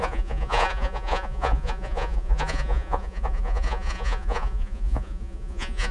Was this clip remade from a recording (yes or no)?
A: yes